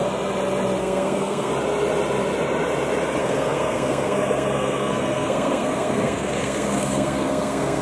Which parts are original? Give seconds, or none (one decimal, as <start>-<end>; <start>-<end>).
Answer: 0.0-0.8; 1.5-3.2